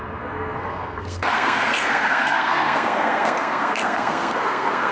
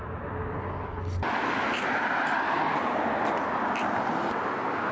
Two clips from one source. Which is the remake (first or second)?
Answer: first